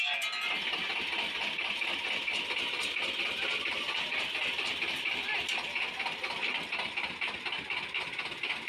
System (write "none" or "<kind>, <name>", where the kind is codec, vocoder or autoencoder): none